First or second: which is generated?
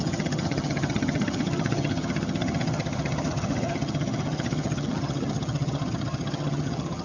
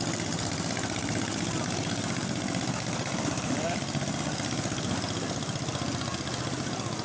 first